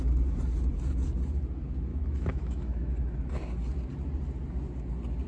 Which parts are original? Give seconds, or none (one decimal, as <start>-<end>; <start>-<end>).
0.0-1.9; 2.9-5.3